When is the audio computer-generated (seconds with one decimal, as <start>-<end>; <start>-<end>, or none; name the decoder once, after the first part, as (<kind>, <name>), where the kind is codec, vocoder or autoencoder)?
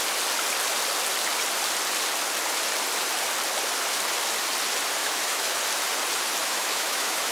5.0-5.6 (autoencoder, DAC-VAE); 6.4-7.3